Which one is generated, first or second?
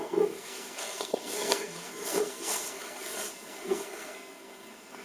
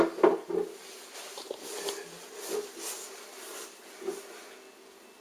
first